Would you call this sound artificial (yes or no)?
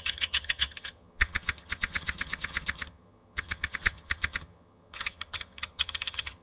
yes